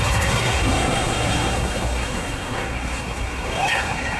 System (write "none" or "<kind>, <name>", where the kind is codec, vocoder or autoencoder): codec, SNAC